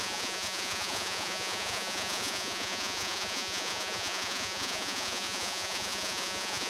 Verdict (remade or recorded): remade